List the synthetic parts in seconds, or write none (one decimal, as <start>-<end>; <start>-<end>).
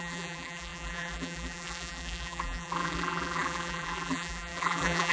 0.0-5.1